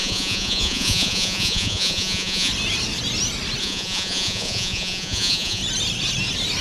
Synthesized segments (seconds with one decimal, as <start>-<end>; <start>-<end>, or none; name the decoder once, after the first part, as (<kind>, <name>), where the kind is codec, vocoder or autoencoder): 0.0-2.5 (vocoder, Vocos); 3.6-5.6